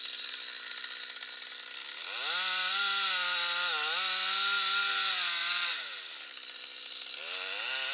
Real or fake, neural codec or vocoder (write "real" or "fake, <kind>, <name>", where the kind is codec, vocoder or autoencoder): real